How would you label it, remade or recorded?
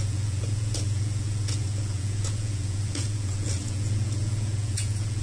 remade